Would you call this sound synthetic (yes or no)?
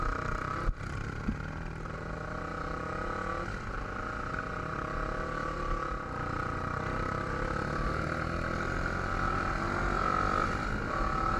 no